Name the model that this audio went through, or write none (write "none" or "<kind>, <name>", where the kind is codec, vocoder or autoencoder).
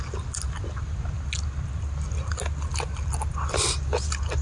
none